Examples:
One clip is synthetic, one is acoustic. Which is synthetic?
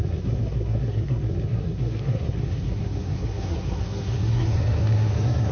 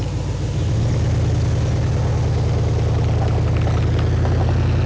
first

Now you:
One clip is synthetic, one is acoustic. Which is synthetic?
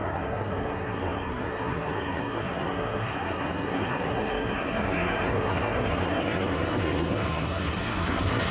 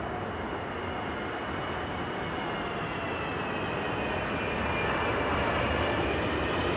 first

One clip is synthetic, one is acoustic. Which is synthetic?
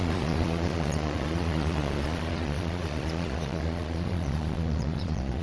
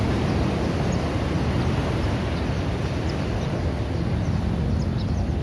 first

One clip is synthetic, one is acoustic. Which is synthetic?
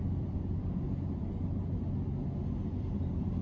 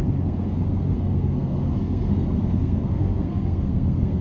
second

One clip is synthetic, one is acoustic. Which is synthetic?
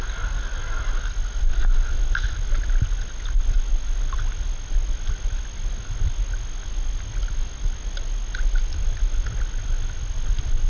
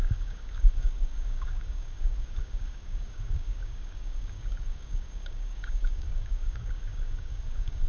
second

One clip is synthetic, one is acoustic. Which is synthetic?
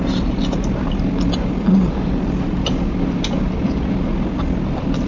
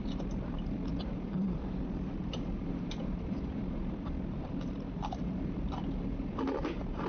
second